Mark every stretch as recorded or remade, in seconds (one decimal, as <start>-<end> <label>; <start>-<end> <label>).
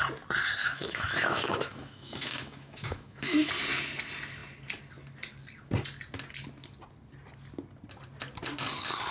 0.0-0.6 recorded; 0.6-3.5 remade; 3.5-9.1 recorded